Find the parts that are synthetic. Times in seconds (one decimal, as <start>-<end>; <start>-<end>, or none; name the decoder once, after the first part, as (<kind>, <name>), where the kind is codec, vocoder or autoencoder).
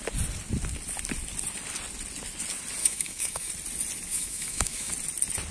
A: 2.8-3.5 (autoencoder, DAC-VAE); 4.1-4.9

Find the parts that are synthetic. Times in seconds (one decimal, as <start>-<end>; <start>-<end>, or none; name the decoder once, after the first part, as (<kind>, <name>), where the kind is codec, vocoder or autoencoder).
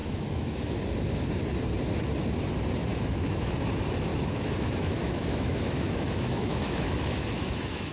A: 0.0-0.7 (autoencoder, DAC-VAE); 2.9-3.6; 4.1-7.9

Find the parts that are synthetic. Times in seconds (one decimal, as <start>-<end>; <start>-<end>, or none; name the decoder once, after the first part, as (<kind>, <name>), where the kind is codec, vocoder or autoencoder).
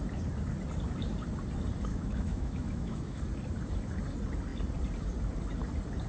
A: 1.9-3.2 (autoencoder, DAC-VAE)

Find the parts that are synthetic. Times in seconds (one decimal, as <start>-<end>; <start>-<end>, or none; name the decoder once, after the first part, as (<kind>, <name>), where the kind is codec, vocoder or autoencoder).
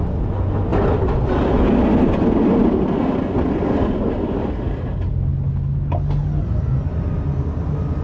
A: none